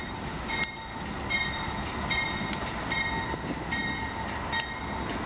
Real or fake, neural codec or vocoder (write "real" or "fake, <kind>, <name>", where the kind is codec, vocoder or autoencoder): real